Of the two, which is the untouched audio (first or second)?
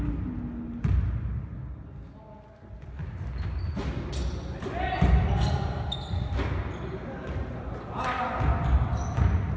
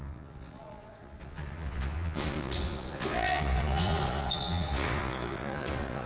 first